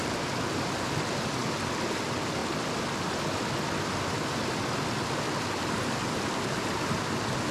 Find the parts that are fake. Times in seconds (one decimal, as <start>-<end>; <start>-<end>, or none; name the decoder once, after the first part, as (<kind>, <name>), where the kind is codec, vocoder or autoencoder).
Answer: none